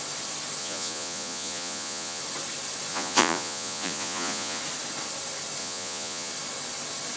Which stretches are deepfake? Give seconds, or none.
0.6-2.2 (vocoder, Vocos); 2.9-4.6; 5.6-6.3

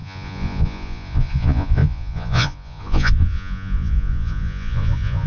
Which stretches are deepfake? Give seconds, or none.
0.0-5.3 (vocoder, Vocos)

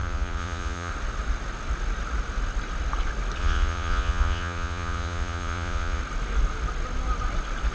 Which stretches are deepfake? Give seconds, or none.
0.0-0.9 (vocoder, Vocos); 3.4-6.0